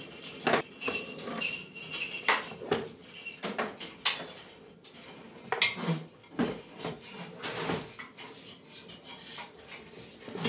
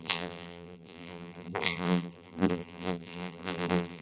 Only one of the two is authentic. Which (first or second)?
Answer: first